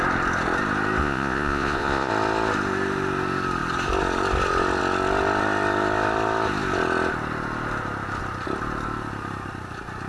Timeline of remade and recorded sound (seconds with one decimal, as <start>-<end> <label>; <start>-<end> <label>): 0.0-1.0 recorded; 1.0-2.1 remade; 2.1-10.1 recorded